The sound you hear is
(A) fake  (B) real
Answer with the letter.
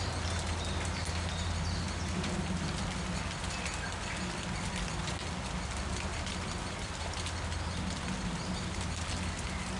B